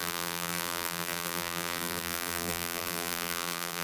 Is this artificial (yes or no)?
yes